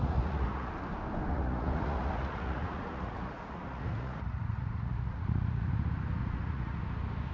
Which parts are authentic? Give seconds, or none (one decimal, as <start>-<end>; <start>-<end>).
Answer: 0.7-1.3; 5.7-6.2; 6.8-7.3